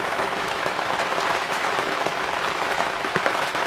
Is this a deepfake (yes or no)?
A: yes